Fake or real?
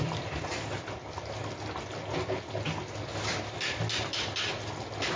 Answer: real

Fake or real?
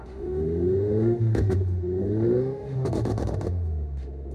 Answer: fake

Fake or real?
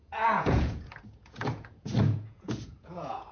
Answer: fake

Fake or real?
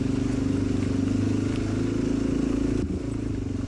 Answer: real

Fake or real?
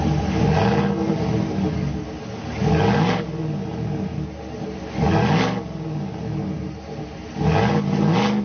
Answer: real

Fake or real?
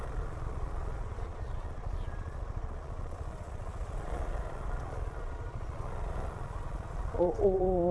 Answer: fake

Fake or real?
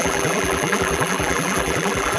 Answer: fake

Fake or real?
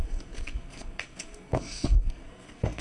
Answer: fake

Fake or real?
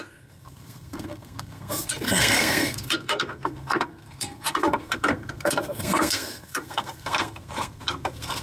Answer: fake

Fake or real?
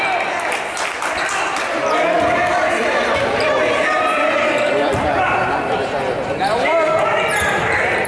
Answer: fake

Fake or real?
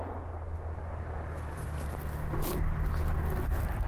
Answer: real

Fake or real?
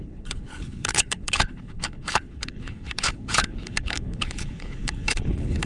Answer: fake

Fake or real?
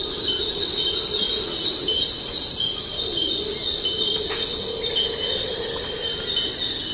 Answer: real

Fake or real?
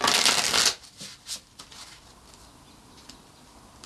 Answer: real